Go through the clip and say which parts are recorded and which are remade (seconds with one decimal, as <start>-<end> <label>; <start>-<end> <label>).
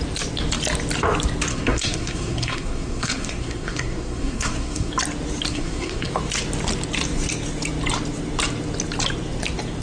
0.0-1.5 recorded; 1.5-4.9 remade; 4.9-5.5 recorded; 5.5-6.1 remade; 6.1-9.8 recorded